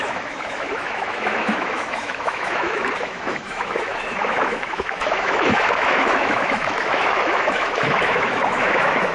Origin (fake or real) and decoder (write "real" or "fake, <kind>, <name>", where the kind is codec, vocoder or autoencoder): fake, autoencoder, DAC-VAE